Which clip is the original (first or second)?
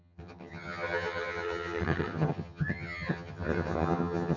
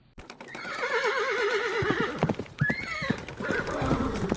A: second